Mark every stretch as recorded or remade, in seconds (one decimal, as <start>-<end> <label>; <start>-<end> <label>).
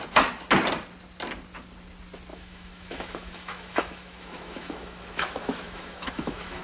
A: 0.0-2.3 recorded; 2.3-6.6 remade